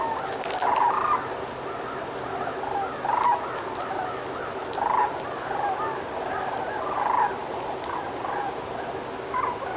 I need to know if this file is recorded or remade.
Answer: recorded